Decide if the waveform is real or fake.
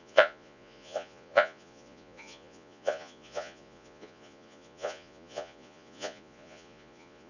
fake